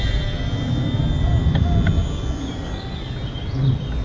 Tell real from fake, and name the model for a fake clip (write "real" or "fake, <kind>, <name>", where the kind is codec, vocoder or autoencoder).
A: real